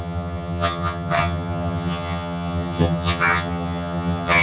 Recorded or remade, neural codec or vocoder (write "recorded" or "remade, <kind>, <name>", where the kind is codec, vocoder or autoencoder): remade, vocoder, HiFi-GAN